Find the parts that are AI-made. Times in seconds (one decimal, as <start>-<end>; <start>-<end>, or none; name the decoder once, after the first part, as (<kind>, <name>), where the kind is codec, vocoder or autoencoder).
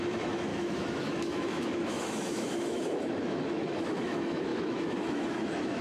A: 0.0-5.8 (autoencoder, DAC-VAE)